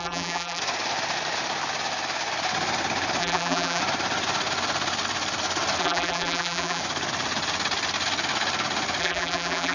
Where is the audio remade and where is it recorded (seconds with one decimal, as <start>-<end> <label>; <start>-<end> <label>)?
0.0-0.6 remade; 0.6-3.2 recorded; 3.2-3.8 remade; 3.8-5.8 recorded; 5.8-6.8 remade; 6.8-9.0 recorded; 9.0-9.7 remade